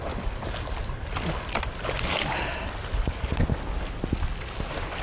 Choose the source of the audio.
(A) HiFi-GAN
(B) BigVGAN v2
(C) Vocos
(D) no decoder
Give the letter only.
D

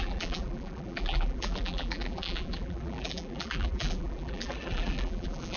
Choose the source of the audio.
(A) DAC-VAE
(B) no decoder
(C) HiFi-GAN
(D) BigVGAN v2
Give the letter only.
D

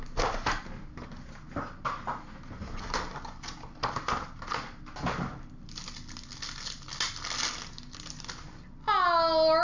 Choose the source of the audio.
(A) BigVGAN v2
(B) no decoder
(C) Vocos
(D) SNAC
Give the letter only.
B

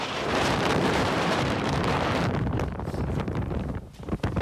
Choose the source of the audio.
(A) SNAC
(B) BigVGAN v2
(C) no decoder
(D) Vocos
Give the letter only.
B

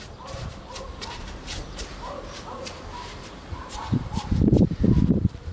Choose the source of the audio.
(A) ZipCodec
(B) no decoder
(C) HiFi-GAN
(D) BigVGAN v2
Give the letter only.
D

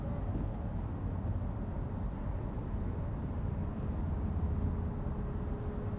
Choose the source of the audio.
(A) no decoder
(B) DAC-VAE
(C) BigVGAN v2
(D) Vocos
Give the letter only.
A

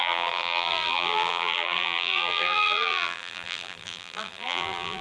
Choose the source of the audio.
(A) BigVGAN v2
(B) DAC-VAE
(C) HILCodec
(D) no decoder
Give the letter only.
A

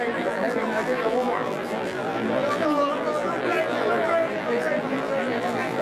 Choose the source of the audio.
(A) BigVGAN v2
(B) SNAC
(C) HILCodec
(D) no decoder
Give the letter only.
A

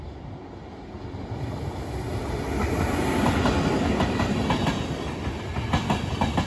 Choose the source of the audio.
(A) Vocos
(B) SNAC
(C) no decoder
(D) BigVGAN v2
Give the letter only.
C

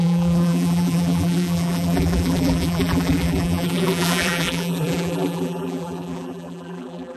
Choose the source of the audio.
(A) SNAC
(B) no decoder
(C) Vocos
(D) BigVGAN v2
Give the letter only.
D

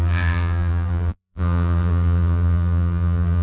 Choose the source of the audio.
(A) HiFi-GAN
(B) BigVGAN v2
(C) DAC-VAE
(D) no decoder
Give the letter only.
B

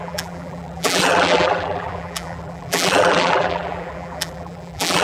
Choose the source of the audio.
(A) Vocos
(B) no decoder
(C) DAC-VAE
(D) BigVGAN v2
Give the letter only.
D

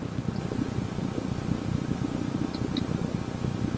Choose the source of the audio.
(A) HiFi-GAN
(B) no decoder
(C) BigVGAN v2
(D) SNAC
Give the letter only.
B